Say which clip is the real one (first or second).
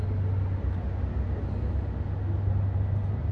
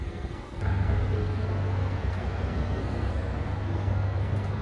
first